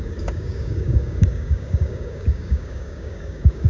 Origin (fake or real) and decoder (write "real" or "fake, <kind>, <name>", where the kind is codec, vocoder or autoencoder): fake, codec, DAC